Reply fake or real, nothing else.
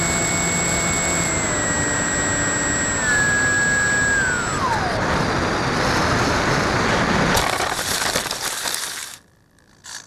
real